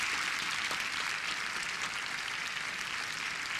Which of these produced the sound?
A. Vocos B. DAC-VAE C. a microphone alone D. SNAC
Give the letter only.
C